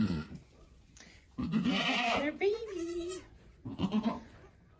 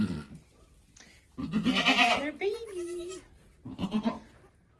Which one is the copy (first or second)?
first